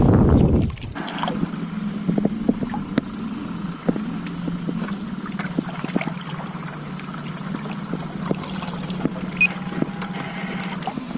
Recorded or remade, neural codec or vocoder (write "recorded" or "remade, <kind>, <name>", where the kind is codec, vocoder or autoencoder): recorded